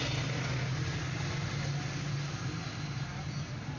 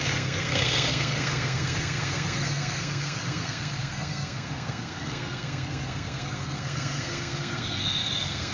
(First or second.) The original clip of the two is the first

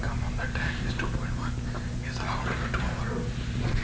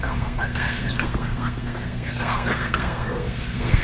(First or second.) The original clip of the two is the first